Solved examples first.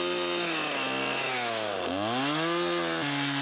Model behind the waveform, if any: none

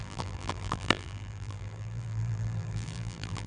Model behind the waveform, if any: vocoder, BigVGAN v2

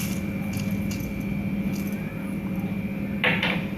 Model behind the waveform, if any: none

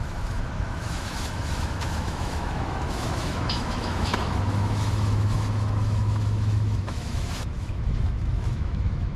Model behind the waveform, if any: autoencoder, DAC-VAE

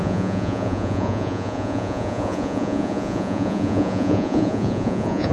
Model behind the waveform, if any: vocoder, Vocos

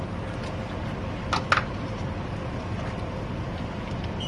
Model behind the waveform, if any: none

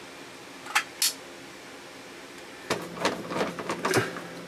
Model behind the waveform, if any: none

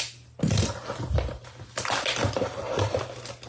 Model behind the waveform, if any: none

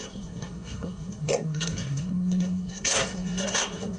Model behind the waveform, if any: codec, SNAC